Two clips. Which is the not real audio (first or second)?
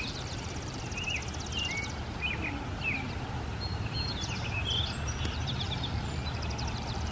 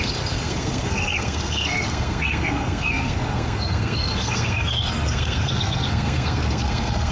second